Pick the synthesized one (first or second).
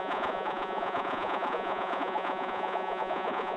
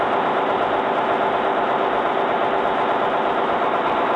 first